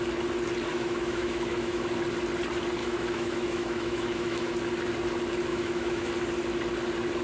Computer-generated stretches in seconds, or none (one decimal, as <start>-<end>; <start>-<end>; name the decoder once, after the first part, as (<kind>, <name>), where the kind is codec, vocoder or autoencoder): 0.7-1.9 (autoencoder, DAC-VAE); 2.8-4.5; 5.5-6.1

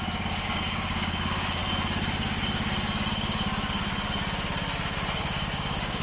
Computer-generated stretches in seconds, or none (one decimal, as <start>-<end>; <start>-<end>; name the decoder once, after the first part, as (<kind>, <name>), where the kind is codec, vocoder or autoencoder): 0.0-1.6 (codec, DAC); 5.2-6.0

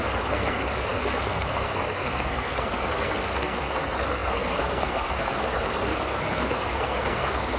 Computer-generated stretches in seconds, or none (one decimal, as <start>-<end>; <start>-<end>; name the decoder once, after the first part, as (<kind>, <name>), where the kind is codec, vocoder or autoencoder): 0.0-7.6 (codec, SNAC)

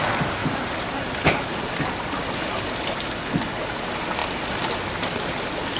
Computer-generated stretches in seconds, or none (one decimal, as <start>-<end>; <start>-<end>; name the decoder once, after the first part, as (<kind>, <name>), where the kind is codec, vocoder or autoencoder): 0.4-1.8 (vocoder, BigVGAN v2)

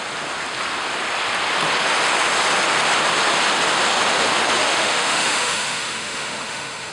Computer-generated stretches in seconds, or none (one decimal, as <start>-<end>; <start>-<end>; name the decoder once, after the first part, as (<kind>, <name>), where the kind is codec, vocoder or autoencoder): 4.6-6.9 (autoencoder, DAC-VAE)

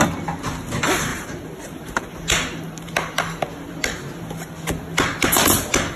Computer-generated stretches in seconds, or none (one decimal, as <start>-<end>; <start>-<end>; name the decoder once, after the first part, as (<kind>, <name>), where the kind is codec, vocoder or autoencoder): 1.1-2.0 (vocoder, BigVGAN v2)